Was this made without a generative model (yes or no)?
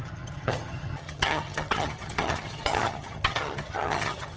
no